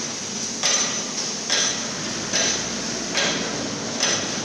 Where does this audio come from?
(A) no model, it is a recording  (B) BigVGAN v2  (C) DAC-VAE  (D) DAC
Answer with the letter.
A